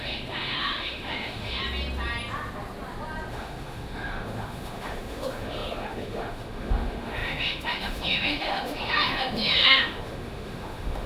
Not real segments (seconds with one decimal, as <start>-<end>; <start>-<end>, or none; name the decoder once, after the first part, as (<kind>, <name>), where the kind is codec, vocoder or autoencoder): 0.0-1.6 (autoencoder, DAC-VAE); 3.3-11.1